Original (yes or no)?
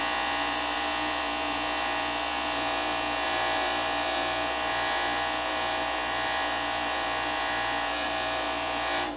no